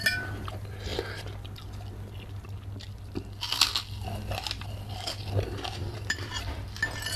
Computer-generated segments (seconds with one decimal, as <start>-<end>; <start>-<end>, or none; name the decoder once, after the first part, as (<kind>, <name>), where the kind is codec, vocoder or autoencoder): 5.8-6.4 (vocoder, BigVGAN v2)